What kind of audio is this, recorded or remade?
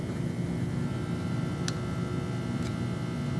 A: recorded